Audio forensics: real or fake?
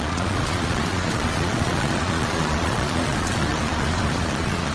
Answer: fake